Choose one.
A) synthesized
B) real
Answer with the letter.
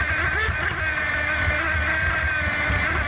B